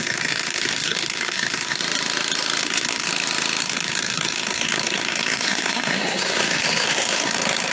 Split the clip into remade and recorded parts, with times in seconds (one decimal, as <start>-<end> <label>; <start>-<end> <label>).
0.0-1.8 remade; 1.8-2.6 recorded; 2.6-3.1 remade; 3.1-3.6 recorded; 3.6-7.7 remade